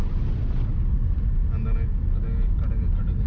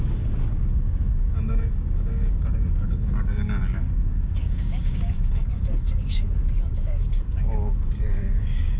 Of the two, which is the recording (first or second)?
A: first